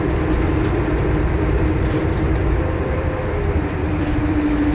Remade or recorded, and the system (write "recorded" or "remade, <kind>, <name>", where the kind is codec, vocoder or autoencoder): remade, vocoder, BigVGAN v2